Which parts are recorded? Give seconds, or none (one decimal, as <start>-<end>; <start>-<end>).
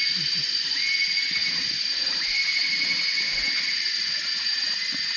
0.0-1.4; 4.5-5.2